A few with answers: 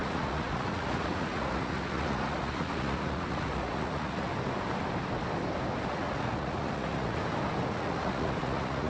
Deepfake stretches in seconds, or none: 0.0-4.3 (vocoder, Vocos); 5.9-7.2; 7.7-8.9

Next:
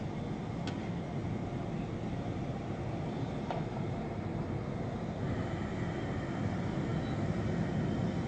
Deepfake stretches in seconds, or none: 1.2-4.2 (vocoder, BigVGAN v2)

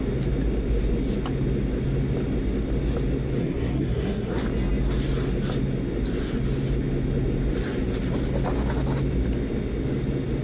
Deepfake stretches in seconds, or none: 3.4-4.3 (codec, SNAC)

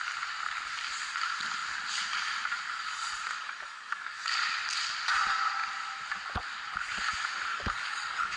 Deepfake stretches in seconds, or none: 3.3-4.3 (codec, DAC); 7.5-8.4

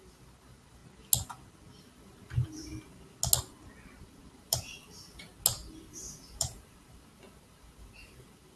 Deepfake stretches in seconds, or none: 0.0-0.8 (vocoder, BigVGAN v2); 1.8-2.7; 3.9-5.3; 5.8-8.6

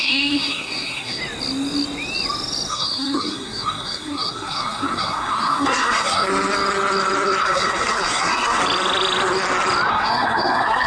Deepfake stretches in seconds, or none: 0.0-1.2 (codec, SNAC); 2.7-6.3; 7.4-8.6; 9.9-10.9

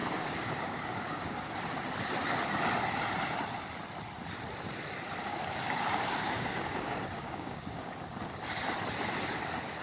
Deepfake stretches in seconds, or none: 0.0-1.5 (codec, DAC); 5.2-7.9